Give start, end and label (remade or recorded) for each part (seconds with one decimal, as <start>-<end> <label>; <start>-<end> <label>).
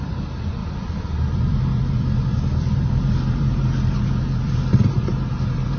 0.0-5.8 remade